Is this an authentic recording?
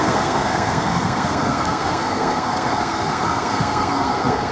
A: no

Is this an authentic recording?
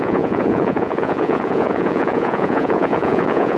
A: no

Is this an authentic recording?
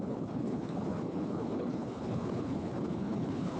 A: no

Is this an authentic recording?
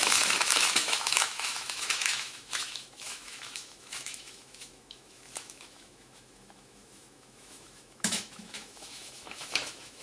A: no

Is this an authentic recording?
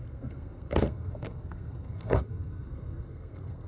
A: no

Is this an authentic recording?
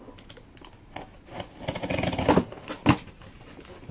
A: yes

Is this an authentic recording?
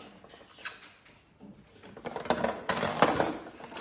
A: yes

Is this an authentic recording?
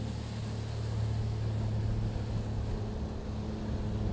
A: yes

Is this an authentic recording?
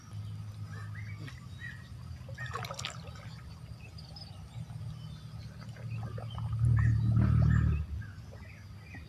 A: yes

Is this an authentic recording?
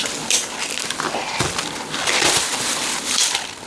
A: yes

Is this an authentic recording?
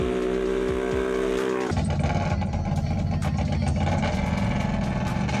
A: yes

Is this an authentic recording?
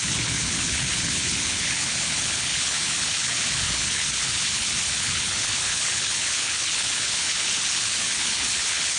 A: no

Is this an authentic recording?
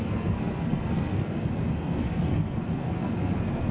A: no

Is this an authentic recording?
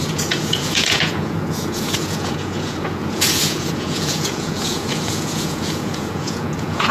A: no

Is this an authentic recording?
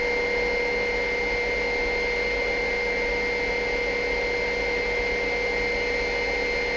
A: yes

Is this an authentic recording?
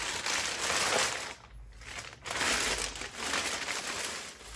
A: yes